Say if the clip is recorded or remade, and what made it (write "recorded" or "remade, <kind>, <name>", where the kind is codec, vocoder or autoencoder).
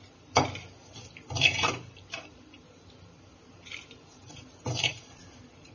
recorded